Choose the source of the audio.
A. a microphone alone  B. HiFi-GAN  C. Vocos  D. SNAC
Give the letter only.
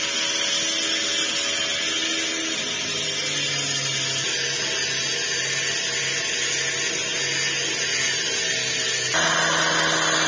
A